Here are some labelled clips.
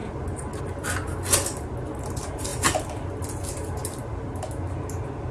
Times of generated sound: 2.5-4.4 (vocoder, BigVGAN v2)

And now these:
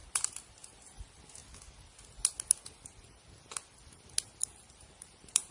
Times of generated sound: 0.0-1.4 (vocoder, BigVGAN v2); 4.7-5.5